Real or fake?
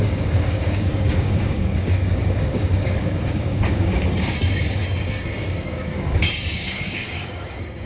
fake